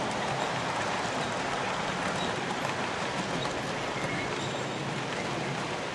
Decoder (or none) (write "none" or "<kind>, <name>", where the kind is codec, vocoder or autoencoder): none